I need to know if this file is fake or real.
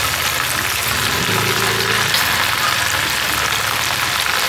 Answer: real